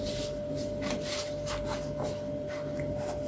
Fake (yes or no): no